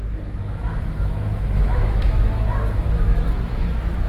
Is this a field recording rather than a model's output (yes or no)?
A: no